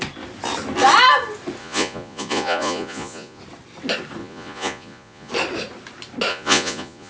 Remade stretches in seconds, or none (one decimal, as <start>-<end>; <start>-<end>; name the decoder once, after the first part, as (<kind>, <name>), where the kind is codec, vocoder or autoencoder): 1.6-3.4 (vocoder, Vocos); 4.2-5.3; 6.3-7.1